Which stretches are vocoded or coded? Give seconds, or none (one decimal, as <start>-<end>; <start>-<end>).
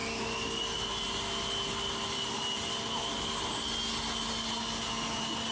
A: none